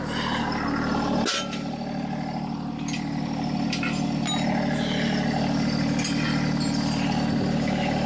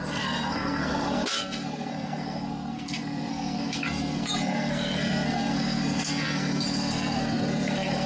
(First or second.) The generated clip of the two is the second